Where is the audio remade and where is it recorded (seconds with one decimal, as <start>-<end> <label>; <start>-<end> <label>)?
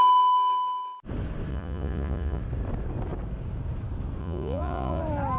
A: 0.0-1.5 recorded; 1.5-2.4 remade; 2.4-4.2 recorded; 4.2-5.0 remade; 5.0-5.4 recorded